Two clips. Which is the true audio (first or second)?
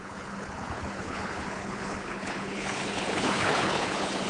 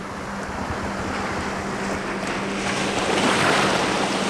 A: second